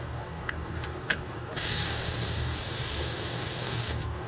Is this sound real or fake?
fake